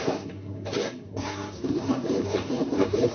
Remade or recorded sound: remade